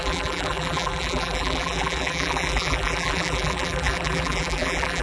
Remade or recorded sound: remade